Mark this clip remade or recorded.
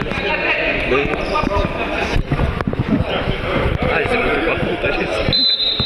recorded